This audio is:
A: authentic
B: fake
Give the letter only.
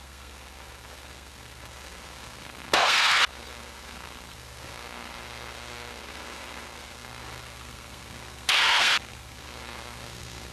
B